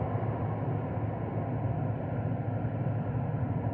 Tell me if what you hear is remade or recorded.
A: recorded